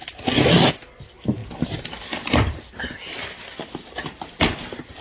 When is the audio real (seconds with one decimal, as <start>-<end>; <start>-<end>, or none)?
0.0-5.0